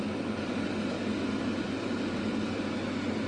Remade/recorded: recorded